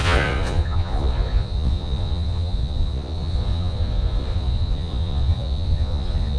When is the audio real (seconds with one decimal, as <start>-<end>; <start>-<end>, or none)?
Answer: none